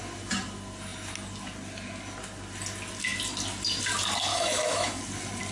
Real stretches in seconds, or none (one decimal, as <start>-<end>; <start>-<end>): 0.0-4.3; 5.0-5.5